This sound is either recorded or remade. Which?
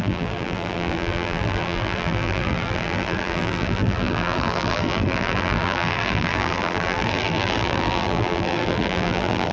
remade